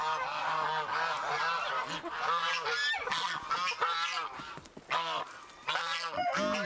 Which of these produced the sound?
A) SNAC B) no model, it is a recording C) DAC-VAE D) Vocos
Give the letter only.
B